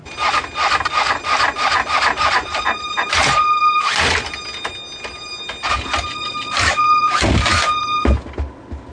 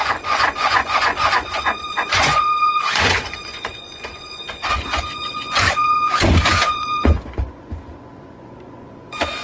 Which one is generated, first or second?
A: second